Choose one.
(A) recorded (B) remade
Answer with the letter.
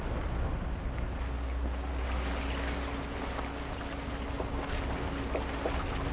A